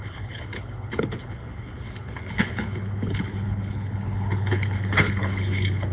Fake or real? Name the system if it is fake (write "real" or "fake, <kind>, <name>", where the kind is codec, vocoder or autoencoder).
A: fake, codec, HILCodec